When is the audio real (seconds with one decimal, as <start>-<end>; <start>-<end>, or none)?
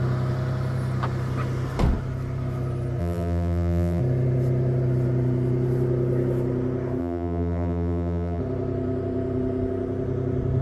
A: 0.0-3.0; 4.0-7.0; 8.4-10.6